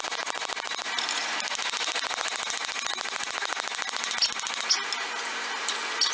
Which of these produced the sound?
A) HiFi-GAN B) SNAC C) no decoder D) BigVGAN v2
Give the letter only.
C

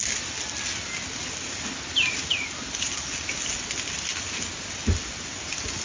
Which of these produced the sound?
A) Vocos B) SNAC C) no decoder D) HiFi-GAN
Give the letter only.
C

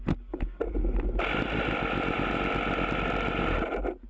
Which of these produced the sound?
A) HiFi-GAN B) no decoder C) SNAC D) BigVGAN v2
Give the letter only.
B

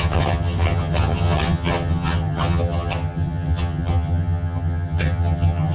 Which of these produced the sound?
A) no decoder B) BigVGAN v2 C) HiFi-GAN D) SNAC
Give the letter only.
C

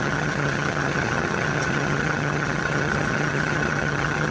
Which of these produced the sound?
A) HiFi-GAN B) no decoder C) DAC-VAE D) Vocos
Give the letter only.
A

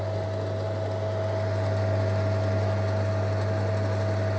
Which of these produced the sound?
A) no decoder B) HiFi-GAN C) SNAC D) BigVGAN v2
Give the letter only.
A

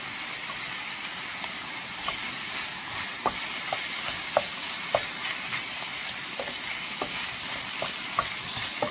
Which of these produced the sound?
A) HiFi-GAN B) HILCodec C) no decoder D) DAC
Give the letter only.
C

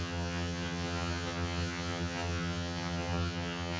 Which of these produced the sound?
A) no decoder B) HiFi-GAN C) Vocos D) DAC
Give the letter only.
B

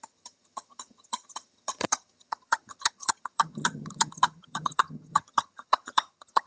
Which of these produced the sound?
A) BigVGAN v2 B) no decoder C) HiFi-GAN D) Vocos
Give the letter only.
C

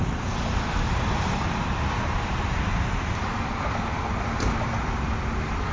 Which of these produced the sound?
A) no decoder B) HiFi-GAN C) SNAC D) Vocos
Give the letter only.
A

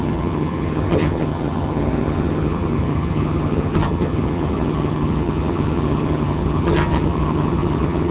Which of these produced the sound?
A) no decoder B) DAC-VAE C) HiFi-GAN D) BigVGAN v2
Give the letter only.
C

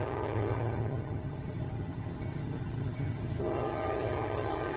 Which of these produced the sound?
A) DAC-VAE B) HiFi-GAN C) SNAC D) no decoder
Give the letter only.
B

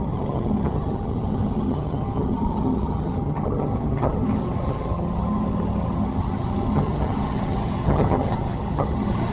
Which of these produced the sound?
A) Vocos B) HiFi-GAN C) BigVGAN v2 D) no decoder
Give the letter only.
B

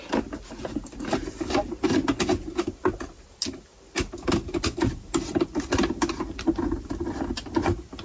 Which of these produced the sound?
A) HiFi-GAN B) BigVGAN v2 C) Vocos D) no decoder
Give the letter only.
D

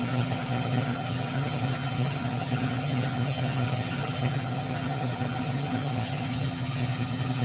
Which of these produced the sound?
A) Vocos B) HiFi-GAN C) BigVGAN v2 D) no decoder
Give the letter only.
B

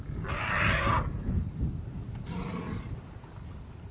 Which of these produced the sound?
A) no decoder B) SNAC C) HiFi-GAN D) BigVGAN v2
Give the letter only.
A